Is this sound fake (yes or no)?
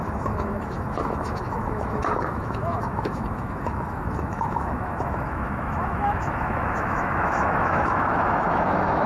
yes